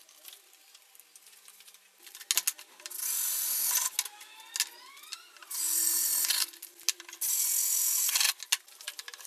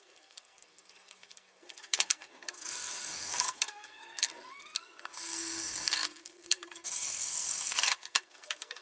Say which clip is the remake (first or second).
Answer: second